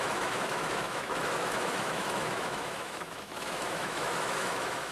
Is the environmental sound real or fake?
fake